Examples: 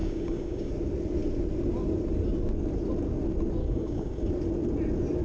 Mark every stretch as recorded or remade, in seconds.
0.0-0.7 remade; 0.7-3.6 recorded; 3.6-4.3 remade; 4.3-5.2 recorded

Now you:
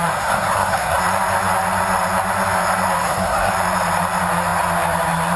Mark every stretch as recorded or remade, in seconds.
0.0-1.0 remade; 1.0-3.0 recorded; 3.0-3.5 remade; 3.5-5.4 recorded

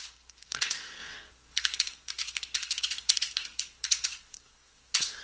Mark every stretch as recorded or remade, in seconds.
0.0-5.2 remade

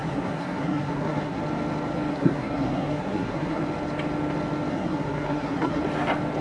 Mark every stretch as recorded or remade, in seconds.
0.0-1.4 remade; 1.4-2.1 recorded; 2.1-3.6 remade; 3.6-4.7 recorded; 4.7-5.8 remade; 5.8-6.4 recorded

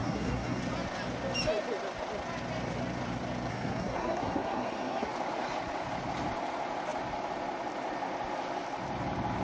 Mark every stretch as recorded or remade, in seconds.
0.0-0.6 remade; 0.6-3.5 recorded; 3.5-5.1 remade; 5.1-9.4 recorded

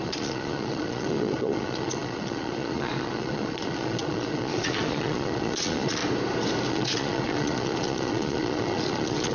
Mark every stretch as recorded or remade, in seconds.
0.0-6.0 remade; 6.0-6.7 recorded; 6.7-9.3 remade

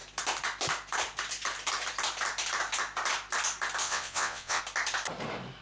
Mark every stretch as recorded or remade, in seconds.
0.0-3.8 recorded; 3.8-4.6 remade; 4.6-5.6 recorded